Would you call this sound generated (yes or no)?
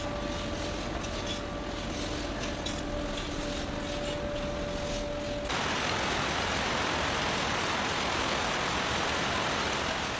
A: no